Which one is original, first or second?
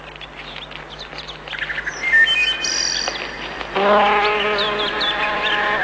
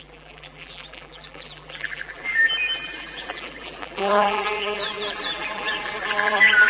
first